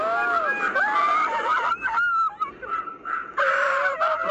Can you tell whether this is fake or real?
real